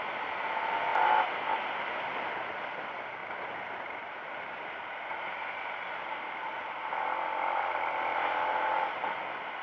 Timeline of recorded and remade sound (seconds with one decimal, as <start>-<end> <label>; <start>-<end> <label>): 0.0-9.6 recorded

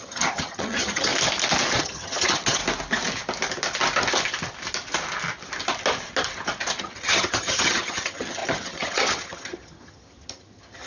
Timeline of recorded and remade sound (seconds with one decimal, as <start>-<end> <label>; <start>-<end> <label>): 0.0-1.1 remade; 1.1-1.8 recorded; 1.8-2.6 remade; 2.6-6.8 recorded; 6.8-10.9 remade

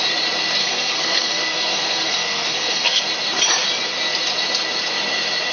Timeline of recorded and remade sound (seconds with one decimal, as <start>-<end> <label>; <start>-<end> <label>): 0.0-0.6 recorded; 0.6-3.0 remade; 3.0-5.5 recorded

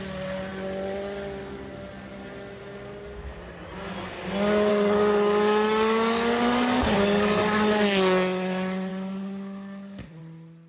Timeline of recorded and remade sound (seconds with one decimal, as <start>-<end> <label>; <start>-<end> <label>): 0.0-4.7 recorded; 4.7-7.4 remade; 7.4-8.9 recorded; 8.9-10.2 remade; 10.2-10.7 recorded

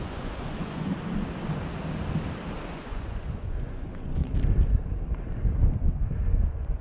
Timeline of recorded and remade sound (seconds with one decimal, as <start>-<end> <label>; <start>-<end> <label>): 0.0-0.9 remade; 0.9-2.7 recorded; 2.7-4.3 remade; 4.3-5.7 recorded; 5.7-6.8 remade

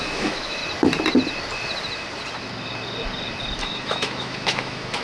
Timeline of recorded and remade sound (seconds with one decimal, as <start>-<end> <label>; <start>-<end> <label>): 0.0-0.6 remade; 0.6-3.6 recorded; 3.6-5.0 remade

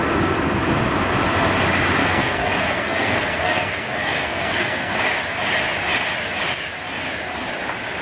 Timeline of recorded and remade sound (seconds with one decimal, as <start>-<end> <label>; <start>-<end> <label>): 0.0-2.0 recorded; 2.0-5.0 remade; 5.0-8.0 recorded

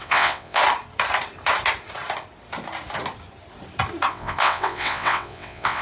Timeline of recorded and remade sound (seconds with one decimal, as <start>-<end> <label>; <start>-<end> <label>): 0.0-0.6 remade; 0.6-4.1 recorded; 4.1-5.8 remade